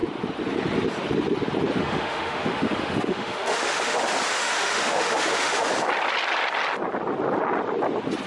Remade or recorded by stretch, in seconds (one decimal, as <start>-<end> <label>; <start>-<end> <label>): 0.0-1.8 recorded; 1.8-4.0 remade; 4.0-4.4 recorded; 4.4-5.7 remade; 5.7-8.3 recorded